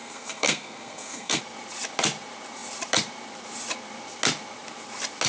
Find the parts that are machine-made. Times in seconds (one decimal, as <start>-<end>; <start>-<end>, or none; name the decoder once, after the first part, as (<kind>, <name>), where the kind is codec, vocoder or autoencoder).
0.0-1.4 (codec, SNAC)